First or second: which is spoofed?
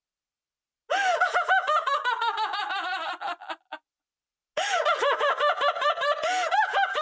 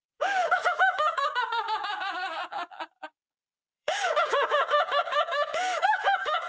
second